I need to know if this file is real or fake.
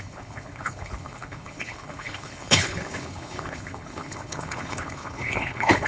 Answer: fake